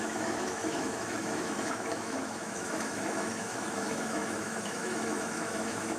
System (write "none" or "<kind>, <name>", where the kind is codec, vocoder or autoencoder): autoencoder, DAC-VAE